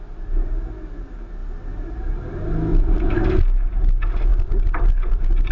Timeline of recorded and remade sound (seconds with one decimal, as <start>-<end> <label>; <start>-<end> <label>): 0.0-2.7 recorded; 2.7-3.2 remade; 3.2-5.5 recorded